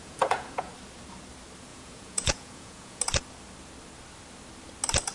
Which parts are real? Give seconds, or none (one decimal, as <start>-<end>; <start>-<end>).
0.7-1.7; 3.0-5.1